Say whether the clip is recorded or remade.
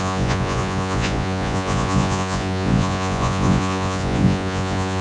remade